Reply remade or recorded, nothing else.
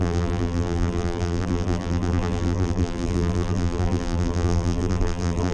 remade